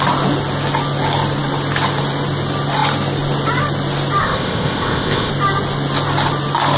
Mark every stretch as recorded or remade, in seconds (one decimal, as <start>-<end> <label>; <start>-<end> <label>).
0.0-4.2 recorded; 4.2-5.3 remade; 5.3-6.8 recorded